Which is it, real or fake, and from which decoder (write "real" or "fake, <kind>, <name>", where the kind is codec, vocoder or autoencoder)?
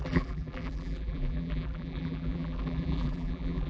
fake, vocoder, BigVGAN v2